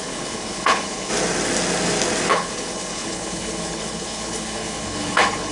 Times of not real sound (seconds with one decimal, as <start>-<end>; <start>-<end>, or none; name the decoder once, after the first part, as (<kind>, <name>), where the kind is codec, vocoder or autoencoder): 0.0-1.1 (codec, HILCodec); 2.3-5.5